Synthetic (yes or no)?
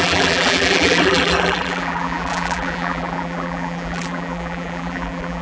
yes